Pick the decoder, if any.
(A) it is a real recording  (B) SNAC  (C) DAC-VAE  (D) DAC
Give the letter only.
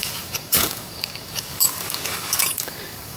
D